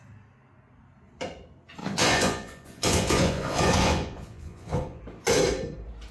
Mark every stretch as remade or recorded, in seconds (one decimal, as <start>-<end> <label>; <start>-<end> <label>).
0.0-1.8 recorded; 1.8-5.0 remade; 5.0-6.1 recorded